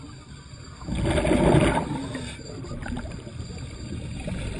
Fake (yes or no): no